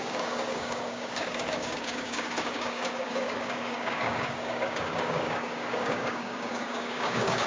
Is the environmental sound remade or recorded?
remade